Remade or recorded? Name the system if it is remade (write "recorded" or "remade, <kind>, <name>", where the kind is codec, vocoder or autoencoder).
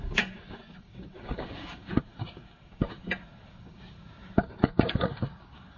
remade, codec, DAC